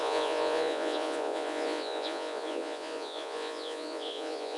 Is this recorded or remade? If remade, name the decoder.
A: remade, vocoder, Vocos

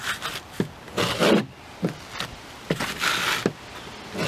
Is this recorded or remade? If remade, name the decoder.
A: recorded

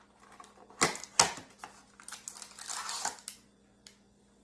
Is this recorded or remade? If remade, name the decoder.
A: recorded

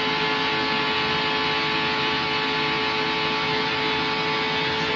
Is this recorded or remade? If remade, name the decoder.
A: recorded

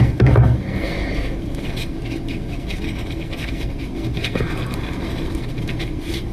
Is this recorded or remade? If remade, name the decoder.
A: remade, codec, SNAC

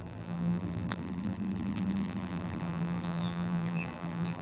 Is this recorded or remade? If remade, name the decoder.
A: remade, vocoder, BigVGAN v2